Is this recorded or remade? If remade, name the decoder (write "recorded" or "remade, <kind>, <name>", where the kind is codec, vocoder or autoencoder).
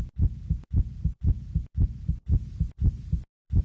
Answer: recorded